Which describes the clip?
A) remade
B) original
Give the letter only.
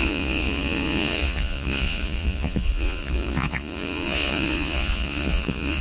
A